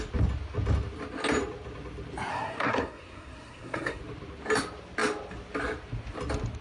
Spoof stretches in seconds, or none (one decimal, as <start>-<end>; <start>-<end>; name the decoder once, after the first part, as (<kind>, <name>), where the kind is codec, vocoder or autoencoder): 2.3-4.0 (codec, SNAC)